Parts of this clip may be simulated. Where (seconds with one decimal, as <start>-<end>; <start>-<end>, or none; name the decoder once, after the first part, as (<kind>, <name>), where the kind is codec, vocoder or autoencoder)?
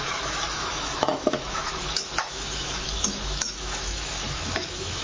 0.0-5.0 (autoencoder, DAC-VAE)